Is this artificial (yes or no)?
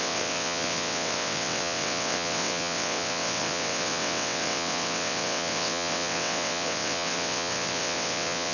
yes